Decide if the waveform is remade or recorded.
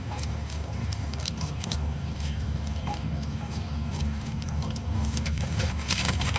remade